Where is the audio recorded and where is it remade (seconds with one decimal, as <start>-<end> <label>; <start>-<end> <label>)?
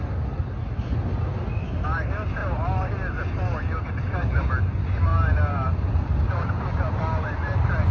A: 0.0-7.9 recorded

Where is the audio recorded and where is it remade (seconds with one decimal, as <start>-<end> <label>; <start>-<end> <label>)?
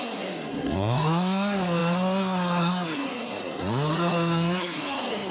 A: 0.0-5.3 remade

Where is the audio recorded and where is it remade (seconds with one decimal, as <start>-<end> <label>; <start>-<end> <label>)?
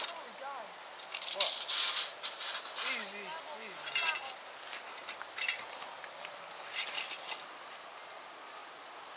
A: 0.0-9.2 recorded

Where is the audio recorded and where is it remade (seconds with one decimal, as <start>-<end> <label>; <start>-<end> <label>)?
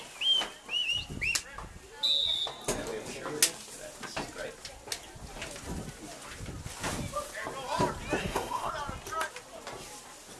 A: 0.0-8.2 recorded; 8.2-8.7 remade; 8.7-10.4 recorded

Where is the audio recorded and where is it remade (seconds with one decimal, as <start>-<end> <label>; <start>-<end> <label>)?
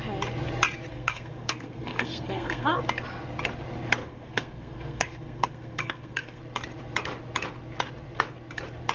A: 0.0-0.9 recorded; 0.9-2.8 remade; 2.8-4.0 recorded; 4.0-6.4 remade; 6.4-8.9 recorded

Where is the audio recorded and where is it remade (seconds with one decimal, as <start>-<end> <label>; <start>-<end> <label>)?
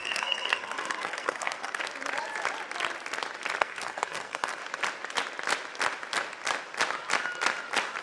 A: 0.0-1.8 remade; 1.8-3.6 recorded; 3.6-4.6 remade; 4.6-8.0 recorded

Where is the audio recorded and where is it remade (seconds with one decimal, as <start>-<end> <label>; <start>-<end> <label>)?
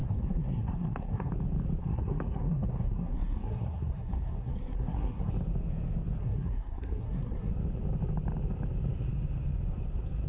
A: 0.0-1.3 remade; 1.3-1.8 recorded; 1.8-5.3 remade; 5.3-6.2 recorded; 6.2-7.5 remade; 7.5-10.3 recorded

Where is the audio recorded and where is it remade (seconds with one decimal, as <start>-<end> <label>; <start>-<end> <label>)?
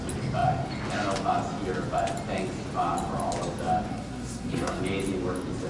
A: 0.0-3.9 recorded; 3.9-4.8 remade; 4.8-5.7 recorded